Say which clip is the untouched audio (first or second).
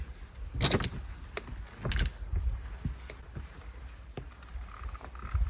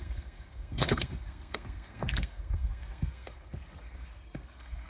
first